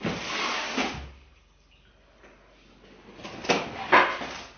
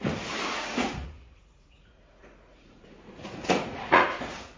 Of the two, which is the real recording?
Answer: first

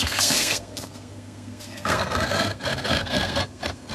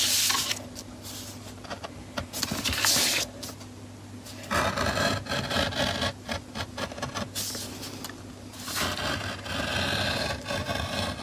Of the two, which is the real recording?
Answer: second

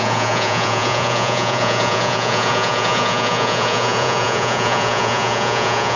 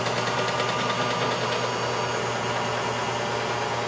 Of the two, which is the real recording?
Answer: second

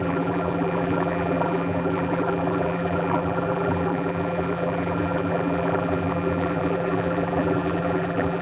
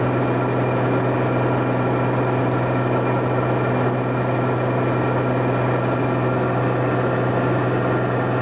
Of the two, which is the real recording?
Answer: second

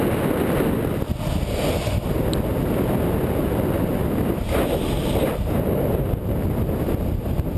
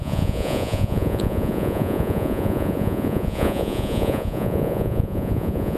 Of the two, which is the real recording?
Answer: first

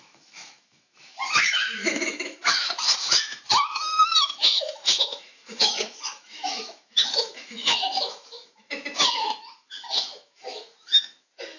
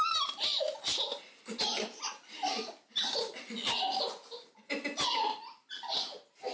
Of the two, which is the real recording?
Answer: second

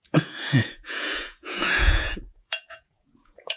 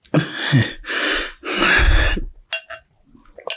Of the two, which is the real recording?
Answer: second